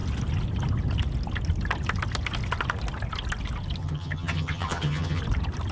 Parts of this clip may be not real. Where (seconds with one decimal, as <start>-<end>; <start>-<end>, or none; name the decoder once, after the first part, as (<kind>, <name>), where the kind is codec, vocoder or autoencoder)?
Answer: 3.8-5.2 (vocoder, HiFi-GAN)